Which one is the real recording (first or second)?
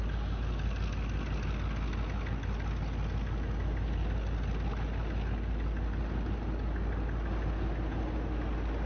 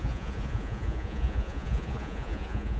first